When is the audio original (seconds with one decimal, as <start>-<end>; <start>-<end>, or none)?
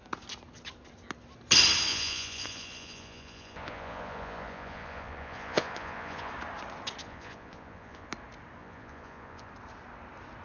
0.0-1.9; 6.3-7.0; 8.1-8.6; 9.5-10.4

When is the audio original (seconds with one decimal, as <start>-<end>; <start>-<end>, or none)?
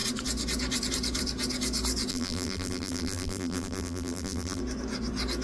0.0-2.1; 4.6-5.4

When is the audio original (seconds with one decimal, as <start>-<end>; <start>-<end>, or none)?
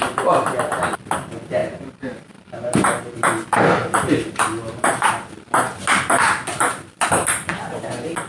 0.0-1.6; 3.0-3.8; 5.1-8.3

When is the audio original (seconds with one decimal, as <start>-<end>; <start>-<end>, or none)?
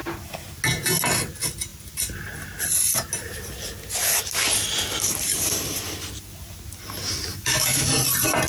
0.0-7.3; 7.9-8.5